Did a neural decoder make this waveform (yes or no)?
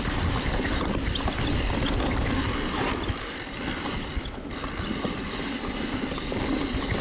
yes